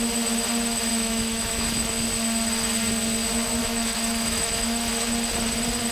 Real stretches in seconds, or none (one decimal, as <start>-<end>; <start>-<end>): 0.0-0.9; 1.9-3.6; 4.9-5.9